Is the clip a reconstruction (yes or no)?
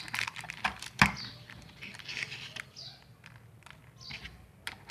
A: no